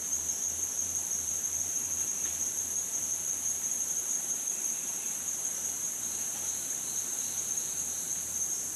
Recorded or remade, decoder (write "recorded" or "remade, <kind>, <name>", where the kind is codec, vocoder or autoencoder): remade, vocoder, BigVGAN v2